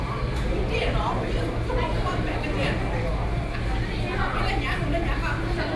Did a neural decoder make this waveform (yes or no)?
no